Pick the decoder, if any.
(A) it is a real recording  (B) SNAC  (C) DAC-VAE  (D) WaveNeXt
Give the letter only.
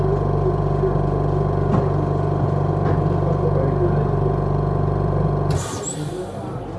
A